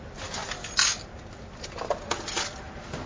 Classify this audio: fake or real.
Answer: real